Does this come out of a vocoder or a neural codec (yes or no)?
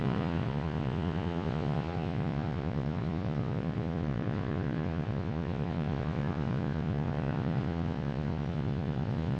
yes